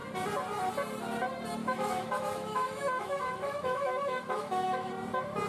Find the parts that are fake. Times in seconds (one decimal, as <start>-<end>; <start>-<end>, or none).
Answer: 1.6-4.9